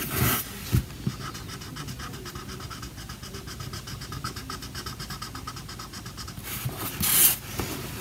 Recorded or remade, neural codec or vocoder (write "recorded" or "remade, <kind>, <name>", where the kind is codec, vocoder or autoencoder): recorded